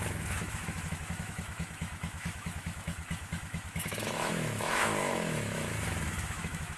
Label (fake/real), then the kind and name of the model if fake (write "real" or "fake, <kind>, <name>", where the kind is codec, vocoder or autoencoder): fake, autoencoder, DAC-VAE